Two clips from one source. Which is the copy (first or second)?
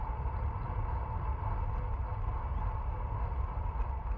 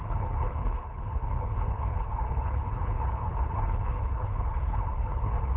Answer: second